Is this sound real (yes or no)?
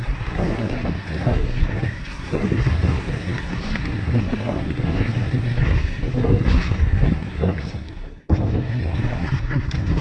no